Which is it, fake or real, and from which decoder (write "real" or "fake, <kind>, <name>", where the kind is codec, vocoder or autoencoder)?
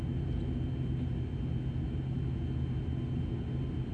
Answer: real